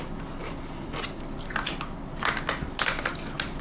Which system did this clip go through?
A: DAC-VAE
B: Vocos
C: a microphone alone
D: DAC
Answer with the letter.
C